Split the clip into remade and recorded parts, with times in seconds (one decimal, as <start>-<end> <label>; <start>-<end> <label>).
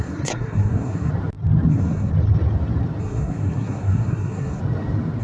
0.0-1.1 remade; 1.1-1.7 recorded; 1.7-2.1 remade; 2.1-3.0 recorded; 3.0-4.6 remade; 4.6-5.2 recorded